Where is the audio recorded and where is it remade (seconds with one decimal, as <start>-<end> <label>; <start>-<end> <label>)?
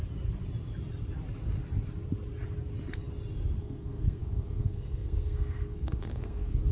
0.0-3.6 recorded; 3.6-6.7 remade